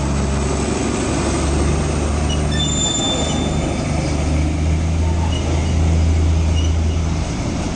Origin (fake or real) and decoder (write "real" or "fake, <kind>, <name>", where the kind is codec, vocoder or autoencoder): real